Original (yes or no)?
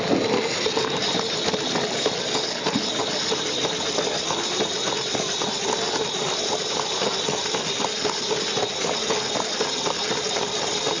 yes